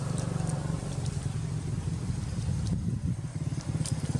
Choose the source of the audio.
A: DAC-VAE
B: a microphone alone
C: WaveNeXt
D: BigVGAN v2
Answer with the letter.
B